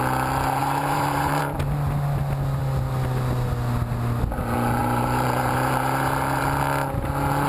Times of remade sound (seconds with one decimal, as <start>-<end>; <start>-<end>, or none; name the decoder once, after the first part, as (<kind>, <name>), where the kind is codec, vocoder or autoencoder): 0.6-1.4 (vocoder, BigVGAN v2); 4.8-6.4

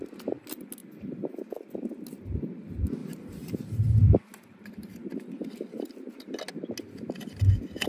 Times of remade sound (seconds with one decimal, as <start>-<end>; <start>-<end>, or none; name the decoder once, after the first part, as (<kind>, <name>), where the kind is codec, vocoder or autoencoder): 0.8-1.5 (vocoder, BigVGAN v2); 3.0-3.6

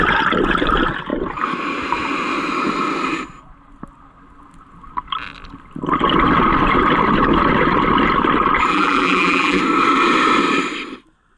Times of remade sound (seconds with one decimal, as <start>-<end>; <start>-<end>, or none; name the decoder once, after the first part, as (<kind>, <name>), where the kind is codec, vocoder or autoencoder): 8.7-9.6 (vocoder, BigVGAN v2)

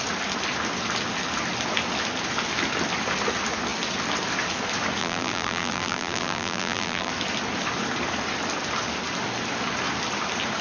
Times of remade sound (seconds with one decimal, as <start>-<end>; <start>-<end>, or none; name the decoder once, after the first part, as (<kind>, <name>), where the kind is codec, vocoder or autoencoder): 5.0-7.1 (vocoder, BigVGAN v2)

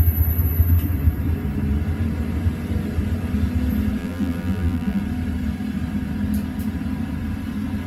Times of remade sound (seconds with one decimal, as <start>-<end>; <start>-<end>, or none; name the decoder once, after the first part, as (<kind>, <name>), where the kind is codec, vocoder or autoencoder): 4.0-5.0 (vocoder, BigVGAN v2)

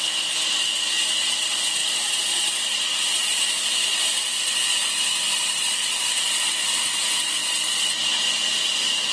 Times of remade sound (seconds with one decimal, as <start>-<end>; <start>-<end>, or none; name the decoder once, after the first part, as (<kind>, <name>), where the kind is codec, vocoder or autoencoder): 0.0-1.8 (vocoder, BigVGAN v2); 4.4-7.4; 8.0-9.1

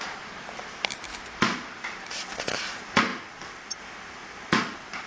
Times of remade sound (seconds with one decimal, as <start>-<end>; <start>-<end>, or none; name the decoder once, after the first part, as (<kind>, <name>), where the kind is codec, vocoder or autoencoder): 1.1-2.3 (vocoder, BigVGAN v2)

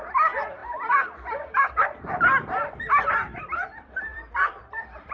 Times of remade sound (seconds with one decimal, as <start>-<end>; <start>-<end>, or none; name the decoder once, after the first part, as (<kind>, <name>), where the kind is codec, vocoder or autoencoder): 0.0-5.1 (vocoder, BigVGAN v2)